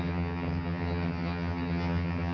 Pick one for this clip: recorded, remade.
remade